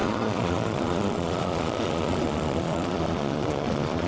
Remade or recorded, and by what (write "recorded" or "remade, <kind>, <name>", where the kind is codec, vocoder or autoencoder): remade, vocoder, Vocos